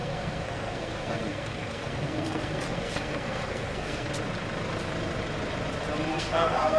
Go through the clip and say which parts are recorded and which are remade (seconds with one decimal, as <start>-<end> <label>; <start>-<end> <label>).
0.0-4.1 remade; 4.1-6.1 recorded; 6.1-6.8 remade